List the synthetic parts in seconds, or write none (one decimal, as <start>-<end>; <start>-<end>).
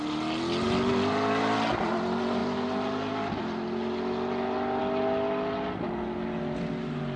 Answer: none